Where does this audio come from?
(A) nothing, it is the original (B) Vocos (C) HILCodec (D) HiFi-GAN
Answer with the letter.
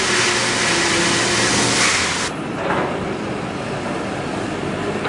A